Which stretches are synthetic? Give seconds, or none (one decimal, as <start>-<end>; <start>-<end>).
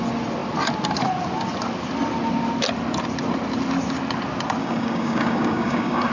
4.6-6.1